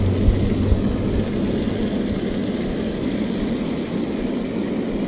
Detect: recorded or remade recorded